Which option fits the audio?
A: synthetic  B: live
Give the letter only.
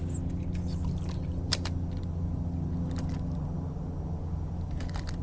B